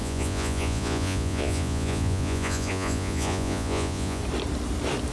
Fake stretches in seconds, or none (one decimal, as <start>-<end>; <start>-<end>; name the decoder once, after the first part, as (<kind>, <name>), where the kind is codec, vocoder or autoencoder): 0.0-4.2 (vocoder, Vocos)